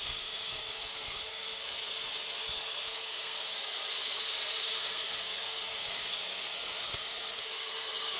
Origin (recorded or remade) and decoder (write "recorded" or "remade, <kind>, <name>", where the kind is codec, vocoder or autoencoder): remade, codec, SNAC